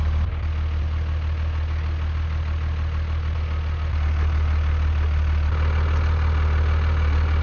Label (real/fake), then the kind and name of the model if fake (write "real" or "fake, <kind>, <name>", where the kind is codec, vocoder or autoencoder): real